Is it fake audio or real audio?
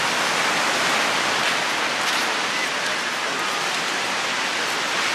fake